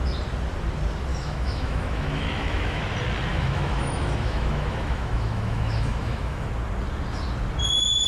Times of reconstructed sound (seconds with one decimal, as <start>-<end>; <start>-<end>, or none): 1.1-2.8; 3.3-6.5